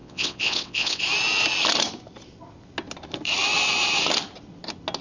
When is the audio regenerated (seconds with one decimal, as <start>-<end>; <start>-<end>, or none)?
0.0-1.0